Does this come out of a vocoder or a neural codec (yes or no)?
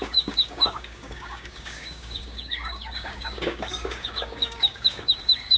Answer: yes